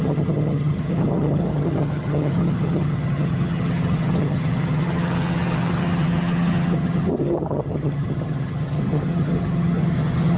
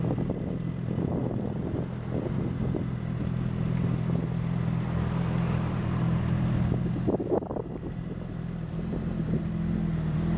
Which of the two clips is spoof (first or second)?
first